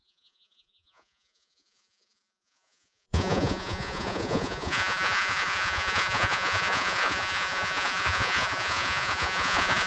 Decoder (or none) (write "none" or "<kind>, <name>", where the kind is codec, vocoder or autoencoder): vocoder, Vocos